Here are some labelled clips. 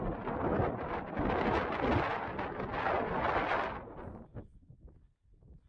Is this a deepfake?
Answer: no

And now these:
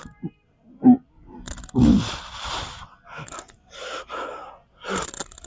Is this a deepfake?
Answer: no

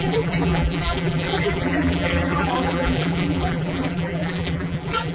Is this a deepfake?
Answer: yes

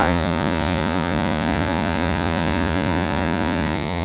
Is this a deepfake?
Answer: yes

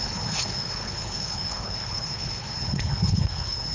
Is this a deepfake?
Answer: yes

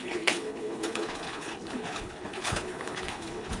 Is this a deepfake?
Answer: yes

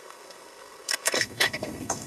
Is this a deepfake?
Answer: yes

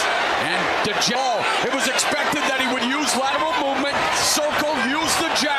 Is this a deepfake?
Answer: no